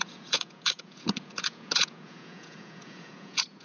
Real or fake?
fake